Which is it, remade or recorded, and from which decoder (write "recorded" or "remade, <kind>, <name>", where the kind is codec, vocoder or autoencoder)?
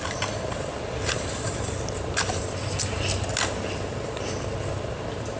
recorded